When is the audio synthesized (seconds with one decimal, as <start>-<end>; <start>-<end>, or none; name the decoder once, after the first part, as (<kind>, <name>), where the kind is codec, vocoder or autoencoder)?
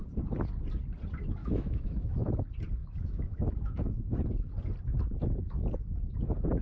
1.4-2.4 (autoencoder, DAC-VAE); 2.8-4.0